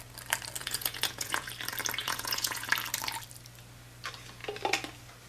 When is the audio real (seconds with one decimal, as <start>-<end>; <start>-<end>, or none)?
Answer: 0.0-0.6; 1.5-2.0; 2.7-5.3